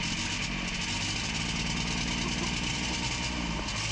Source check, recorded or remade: recorded